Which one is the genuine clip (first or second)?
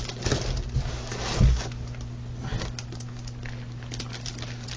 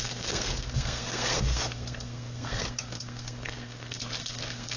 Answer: first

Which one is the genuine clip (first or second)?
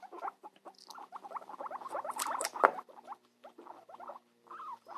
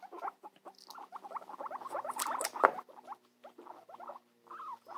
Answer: second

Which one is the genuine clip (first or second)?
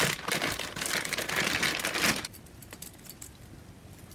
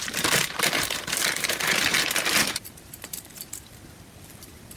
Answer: first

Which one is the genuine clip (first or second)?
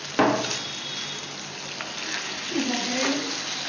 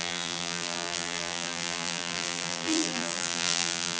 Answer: first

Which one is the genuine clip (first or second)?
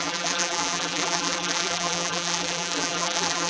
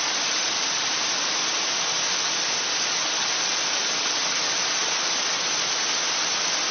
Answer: second